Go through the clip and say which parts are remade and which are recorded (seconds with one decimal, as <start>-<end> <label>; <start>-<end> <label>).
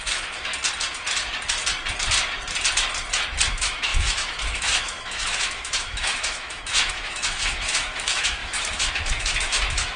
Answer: 0.0-0.5 remade; 0.5-3.5 recorded; 3.5-10.0 remade